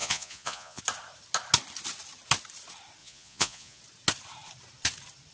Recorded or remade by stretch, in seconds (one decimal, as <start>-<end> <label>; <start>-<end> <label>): 0.0-0.8 remade; 0.8-3.0 recorded; 3.0-3.8 remade; 3.8-5.3 recorded